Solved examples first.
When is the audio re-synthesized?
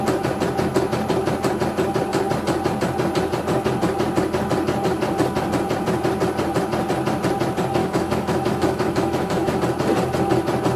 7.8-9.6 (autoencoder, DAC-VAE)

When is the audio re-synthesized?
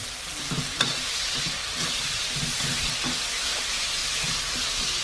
0.7-1.6 (vocoder, Vocos); 3.3-4.0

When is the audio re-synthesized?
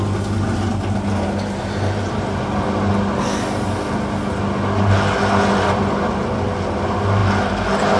none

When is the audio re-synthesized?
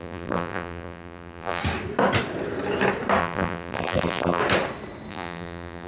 0.0-1.6 (vocoder, BigVGAN v2); 3.2-4.4; 5.1-5.9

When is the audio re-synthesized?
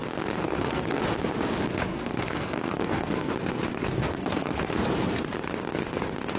0.4-1.0 (codec, SNAC); 1.9-3.3; 4.2-4.7